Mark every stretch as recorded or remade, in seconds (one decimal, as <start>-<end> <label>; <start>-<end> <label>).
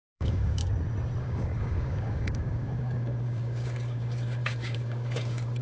0.0-0.6 remade; 0.6-1.2 recorded; 1.2-5.6 remade